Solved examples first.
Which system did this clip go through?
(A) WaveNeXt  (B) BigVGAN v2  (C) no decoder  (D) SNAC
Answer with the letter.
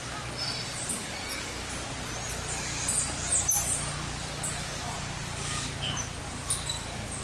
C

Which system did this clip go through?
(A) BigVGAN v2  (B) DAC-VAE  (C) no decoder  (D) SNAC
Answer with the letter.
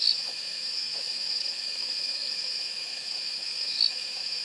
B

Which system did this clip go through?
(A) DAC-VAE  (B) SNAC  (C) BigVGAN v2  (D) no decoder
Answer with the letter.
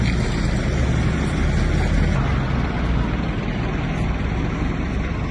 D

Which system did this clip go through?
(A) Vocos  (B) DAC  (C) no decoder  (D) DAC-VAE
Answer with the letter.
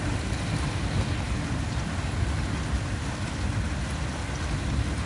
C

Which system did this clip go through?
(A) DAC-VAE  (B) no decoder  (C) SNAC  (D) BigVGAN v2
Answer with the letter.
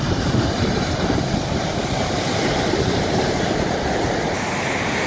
D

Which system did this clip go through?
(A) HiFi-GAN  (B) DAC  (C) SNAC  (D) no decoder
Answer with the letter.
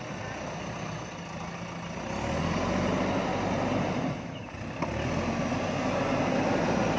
D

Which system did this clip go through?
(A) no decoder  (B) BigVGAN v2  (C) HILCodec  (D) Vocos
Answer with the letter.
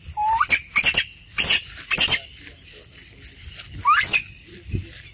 A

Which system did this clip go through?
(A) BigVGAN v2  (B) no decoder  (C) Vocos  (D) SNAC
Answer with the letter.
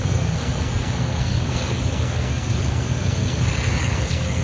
D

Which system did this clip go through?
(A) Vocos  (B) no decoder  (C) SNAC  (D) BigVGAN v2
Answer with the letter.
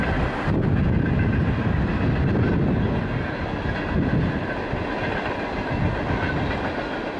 B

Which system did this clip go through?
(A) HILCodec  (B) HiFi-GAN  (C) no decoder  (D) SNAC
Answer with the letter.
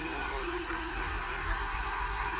D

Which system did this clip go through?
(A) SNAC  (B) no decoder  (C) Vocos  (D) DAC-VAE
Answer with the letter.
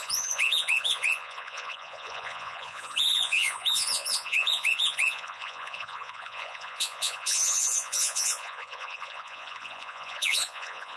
C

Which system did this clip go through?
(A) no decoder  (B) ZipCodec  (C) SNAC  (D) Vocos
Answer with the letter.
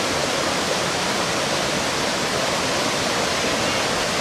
A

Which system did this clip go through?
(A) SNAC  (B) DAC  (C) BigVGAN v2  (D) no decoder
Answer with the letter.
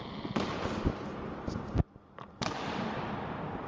D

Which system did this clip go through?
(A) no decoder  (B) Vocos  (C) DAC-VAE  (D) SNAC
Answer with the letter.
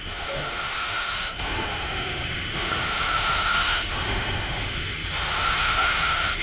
C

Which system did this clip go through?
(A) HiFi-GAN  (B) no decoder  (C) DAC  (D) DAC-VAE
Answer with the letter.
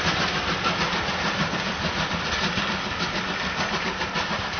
B